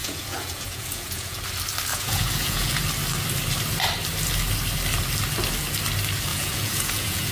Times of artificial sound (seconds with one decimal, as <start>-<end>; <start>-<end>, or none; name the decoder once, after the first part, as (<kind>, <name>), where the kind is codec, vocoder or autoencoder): 0.0-1.4 (vocoder, Vocos); 1.9-2.8; 6.3-7.3